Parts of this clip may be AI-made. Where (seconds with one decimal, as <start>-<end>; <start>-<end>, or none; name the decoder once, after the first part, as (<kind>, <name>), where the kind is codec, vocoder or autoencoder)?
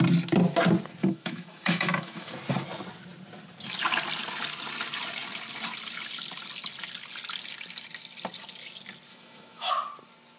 1.0-2.3 (autoencoder, DAC-VAE); 9.1-9.7